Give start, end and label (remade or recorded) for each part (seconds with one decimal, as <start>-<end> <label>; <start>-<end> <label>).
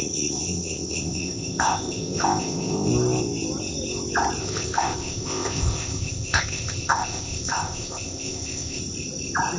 0.0-2.9 remade; 2.9-4.4 recorded; 4.4-8.8 remade; 8.8-9.6 recorded